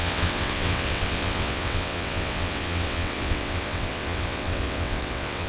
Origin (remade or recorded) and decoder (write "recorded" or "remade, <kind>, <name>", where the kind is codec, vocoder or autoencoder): remade, vocoder, WaveNeXt